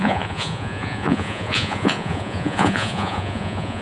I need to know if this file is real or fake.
fake